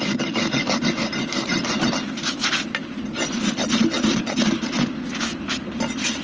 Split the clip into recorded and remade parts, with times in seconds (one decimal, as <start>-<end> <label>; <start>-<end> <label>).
0.0-6.2 recorded